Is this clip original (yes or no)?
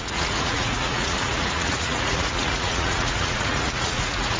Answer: no